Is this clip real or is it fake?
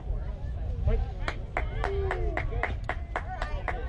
real